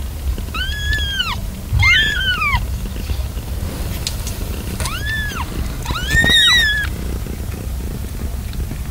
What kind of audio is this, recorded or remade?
recorded